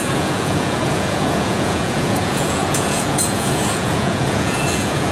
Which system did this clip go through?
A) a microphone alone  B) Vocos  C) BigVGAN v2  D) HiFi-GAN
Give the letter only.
B